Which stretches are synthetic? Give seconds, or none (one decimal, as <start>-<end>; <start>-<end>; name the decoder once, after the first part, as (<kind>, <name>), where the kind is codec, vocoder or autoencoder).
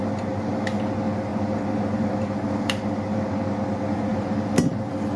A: none